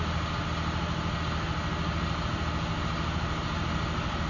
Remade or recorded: recorded